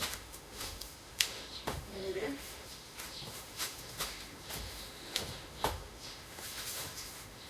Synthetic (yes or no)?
yes